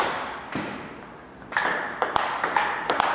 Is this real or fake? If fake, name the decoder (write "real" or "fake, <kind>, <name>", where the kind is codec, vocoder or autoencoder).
real